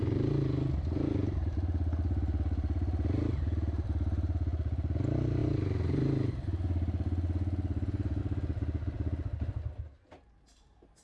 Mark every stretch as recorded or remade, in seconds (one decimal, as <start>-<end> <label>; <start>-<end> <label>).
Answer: 0.0-11.0 recorded